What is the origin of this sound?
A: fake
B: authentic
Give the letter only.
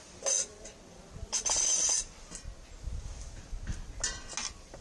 B